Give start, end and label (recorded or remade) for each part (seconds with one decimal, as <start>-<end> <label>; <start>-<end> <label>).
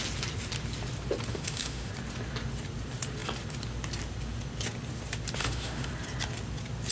0.0-1.3 recorded; 1.3-1.9 remade; 1.9-5.4 recorded; 5.4-5.9 remade; 5.9-6.9 recorded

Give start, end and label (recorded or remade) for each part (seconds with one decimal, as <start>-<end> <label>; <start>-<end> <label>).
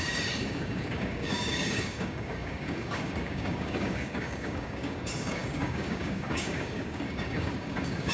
0.0-8.1 remade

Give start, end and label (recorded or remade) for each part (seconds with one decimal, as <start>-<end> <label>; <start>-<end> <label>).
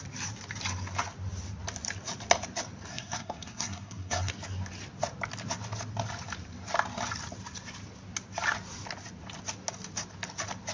0.0-2.9 recorded; 2.9-4.3 remade; 4.3-10.7 recorded